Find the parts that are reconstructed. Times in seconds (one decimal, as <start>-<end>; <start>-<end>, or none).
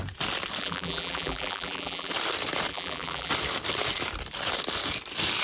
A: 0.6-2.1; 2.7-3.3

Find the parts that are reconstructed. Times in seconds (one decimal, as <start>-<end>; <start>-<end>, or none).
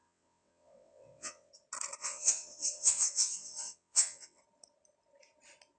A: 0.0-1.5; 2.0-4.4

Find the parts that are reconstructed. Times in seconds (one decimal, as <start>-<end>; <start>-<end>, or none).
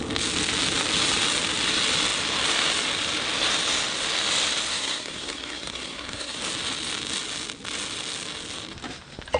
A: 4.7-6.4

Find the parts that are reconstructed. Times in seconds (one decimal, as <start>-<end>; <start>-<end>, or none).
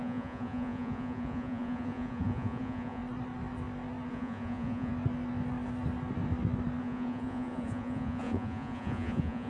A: 0.0-3.0; 4.1-4.9; 6.8-9.5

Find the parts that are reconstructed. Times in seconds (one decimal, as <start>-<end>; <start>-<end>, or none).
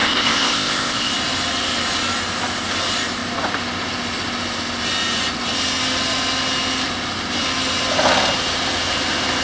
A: 0.0-1.1